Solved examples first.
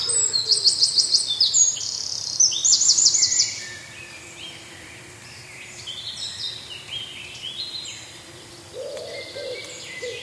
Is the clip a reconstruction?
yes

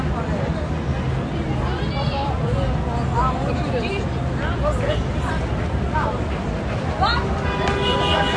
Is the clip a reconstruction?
no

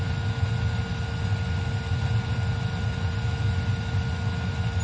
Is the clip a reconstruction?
no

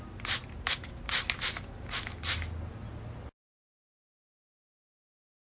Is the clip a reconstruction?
no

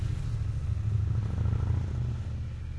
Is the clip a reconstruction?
no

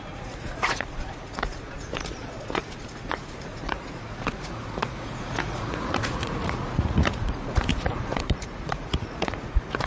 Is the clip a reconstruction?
yes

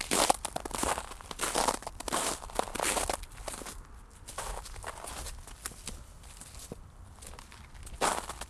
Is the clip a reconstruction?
no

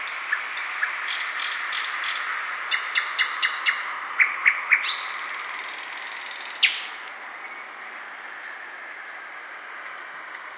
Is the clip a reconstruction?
no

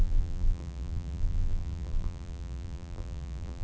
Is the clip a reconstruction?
yes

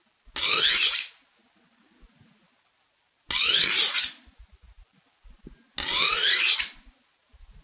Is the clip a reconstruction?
no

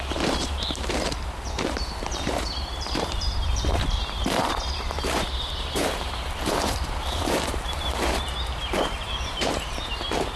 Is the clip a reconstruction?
yes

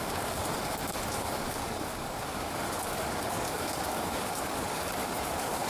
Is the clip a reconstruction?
yes